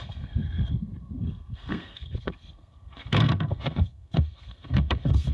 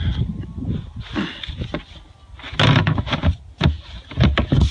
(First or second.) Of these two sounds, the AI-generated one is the first